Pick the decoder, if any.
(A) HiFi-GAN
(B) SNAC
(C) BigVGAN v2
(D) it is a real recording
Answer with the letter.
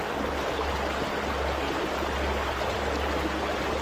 D